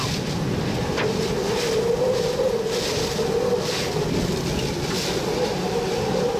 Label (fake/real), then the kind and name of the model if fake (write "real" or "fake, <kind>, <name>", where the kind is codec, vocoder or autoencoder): real